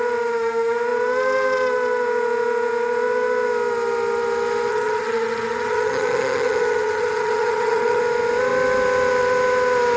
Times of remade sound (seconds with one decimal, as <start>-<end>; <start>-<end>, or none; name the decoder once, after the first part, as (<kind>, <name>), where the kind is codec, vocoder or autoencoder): 4.7-8.0 (vocoder, HiFi-GAN)